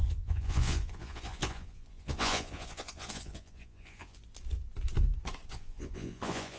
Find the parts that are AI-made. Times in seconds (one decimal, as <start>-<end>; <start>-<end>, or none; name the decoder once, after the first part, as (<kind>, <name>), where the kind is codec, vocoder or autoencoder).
0.0-4.2 (vocoder, Vocos); 5.5-6.6